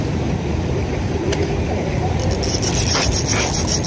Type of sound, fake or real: real